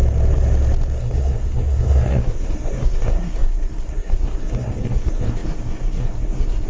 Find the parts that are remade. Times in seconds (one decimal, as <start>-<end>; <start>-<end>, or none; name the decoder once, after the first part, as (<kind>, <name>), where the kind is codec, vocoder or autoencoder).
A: 1.0-6.7 (codec, SNAC)